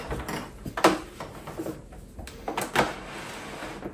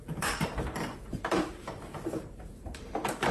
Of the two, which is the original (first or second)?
first